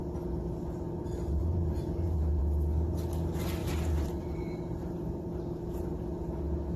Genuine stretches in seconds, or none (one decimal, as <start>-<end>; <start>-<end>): 0.0-1.4; 2.4-3.6; 6.0-6.8